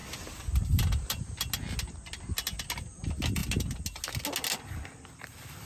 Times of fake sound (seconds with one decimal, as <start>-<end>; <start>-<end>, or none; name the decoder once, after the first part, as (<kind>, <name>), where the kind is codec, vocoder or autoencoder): 0.0-1.2 (vocoder, BigVGAN v2)